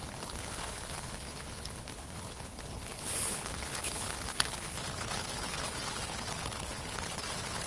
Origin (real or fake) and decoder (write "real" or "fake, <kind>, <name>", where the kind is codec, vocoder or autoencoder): fake, codec, HILCodec